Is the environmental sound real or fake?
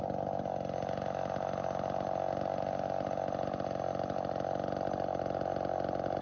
real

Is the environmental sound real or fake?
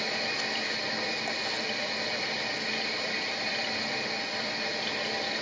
real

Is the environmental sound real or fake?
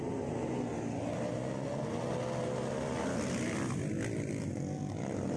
real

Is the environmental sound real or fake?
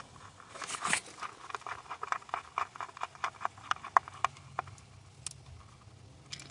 real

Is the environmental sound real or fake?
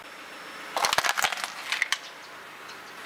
real